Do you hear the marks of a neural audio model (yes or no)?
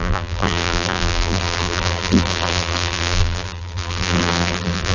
yes